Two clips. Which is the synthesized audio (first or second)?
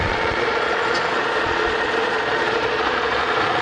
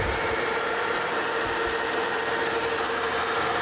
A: first